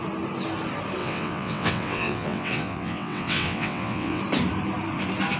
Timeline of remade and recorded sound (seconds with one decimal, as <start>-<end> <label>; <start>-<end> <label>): 0.0-1.0 recorded; 1.0-4.2 remade; 4.2-5.4 recorded